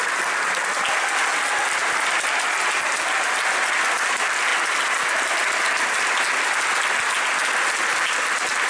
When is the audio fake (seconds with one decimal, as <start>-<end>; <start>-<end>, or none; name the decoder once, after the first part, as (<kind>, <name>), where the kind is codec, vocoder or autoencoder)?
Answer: none